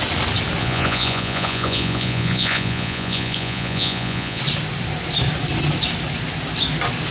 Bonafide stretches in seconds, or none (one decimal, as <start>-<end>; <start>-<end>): 0.0-0.6; 4.4-7.1